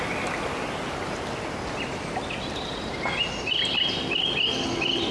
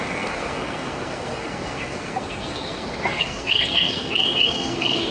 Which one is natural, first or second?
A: first